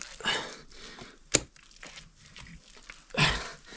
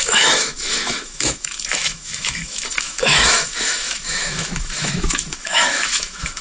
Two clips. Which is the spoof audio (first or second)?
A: second